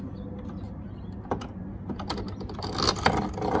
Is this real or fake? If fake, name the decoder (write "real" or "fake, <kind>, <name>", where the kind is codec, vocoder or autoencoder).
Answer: real